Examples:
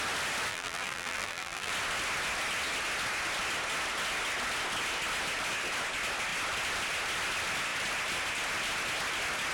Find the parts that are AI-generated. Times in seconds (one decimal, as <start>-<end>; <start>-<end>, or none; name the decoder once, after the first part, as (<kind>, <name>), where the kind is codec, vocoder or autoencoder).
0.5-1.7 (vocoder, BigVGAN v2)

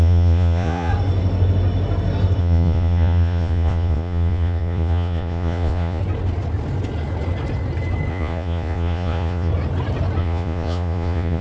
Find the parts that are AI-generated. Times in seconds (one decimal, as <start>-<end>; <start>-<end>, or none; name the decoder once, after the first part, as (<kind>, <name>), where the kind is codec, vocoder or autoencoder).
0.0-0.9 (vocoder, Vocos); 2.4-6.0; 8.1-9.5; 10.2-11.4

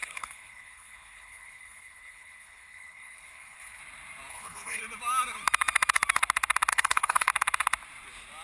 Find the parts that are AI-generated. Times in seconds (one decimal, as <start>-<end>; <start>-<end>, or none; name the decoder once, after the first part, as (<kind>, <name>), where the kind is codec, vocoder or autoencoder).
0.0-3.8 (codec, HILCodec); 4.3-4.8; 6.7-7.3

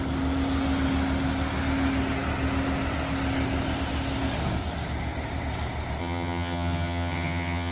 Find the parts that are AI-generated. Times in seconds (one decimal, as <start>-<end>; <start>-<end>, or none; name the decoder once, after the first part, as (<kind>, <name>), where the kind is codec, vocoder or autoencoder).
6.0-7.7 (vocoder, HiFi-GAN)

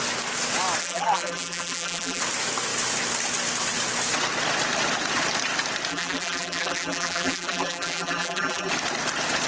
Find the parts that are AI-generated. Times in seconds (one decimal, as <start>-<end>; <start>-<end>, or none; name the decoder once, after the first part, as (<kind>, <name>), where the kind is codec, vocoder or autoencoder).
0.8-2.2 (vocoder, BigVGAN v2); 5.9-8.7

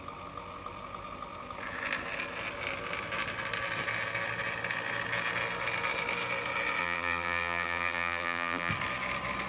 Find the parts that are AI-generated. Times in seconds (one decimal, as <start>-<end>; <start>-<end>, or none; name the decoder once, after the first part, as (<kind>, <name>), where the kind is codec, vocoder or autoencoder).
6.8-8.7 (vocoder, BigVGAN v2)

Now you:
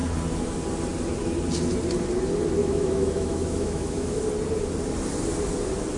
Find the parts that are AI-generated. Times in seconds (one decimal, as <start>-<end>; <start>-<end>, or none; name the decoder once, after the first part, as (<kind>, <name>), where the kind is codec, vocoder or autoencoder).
2.6-4.2 (autoencoder, DAC-VAE)